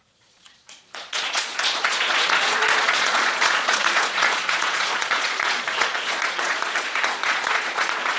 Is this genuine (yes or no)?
no